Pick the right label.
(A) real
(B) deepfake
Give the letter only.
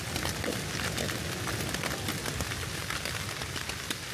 A